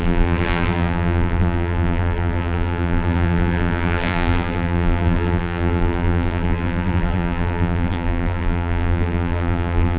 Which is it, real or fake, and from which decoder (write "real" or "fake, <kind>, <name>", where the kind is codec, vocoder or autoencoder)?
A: fake, vocoder, BigVGAN v2